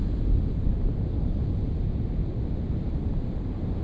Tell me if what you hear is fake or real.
real